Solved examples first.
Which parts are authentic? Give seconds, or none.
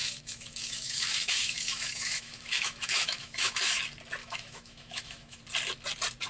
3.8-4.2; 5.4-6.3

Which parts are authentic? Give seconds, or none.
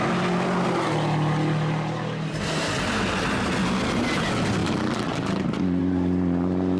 0.0-6.8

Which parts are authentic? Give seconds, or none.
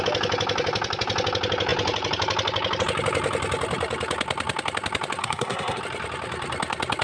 0.0-5.2; 5.8-7.0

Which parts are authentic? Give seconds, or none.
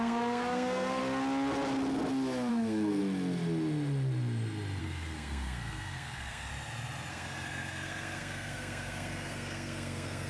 1.0-2.5; 3.0-4.8; 6.5-7.1